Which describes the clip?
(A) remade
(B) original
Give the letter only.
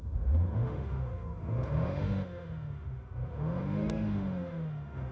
A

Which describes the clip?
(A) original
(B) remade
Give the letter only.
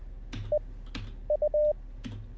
A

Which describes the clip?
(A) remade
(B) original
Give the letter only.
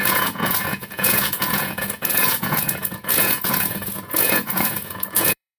A